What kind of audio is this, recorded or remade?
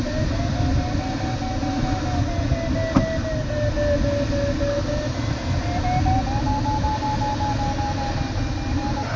recorded